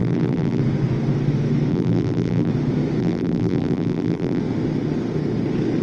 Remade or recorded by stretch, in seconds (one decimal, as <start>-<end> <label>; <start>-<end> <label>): 0.0-0.6 remade; 0.6-1.7 recorded; 1.7-2.5 remade; 2.5-3.0 recorded; 3.0-4.4 remade; 4.4-5.8 recorded